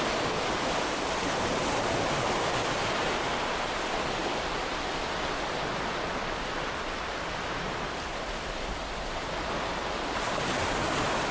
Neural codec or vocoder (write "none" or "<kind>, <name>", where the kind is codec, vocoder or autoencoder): none